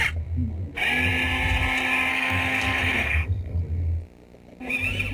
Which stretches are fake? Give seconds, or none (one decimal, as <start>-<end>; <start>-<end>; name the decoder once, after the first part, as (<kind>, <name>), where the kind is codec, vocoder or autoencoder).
2.1-3.6 (codec, SNAC)